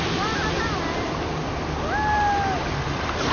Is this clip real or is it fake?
real